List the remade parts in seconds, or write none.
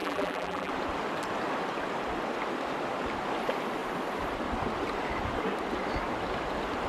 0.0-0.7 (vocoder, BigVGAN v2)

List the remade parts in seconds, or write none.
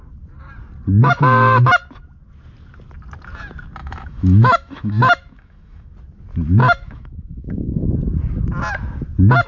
1.0-1.8 (autoencoder, DAC-VAE); 3.8-5.9; 6.6-7.9